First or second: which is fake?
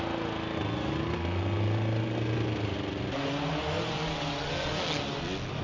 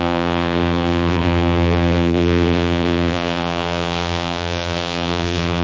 second